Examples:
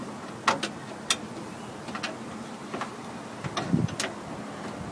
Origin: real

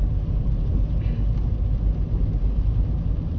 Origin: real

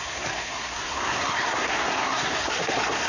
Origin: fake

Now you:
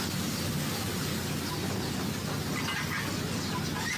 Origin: real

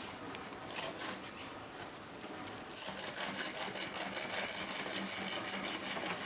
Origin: real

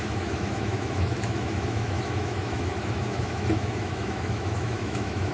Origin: fake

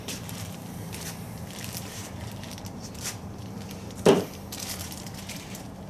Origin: fake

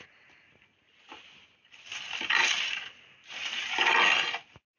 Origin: real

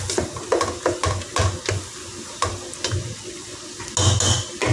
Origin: real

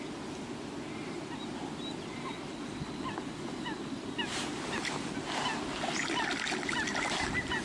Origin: real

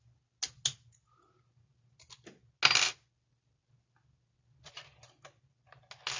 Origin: real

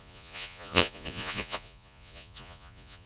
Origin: fake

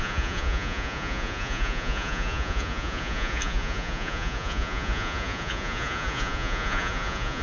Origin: fake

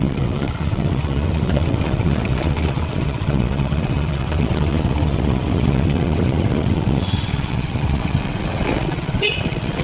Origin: fake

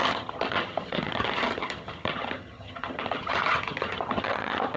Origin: fake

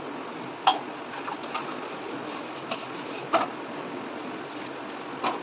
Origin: real